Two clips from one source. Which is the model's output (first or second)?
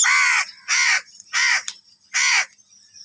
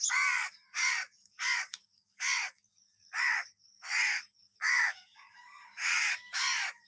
second